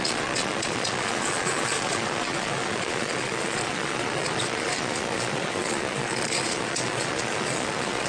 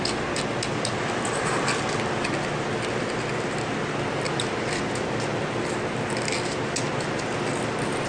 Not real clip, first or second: first